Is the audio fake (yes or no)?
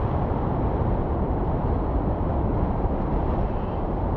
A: no